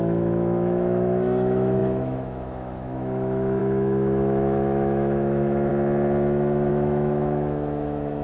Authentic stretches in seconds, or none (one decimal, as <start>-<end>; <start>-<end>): 5.7-6.7